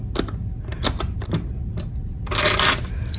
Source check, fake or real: real